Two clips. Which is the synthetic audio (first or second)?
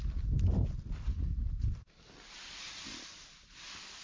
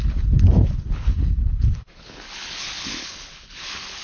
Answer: second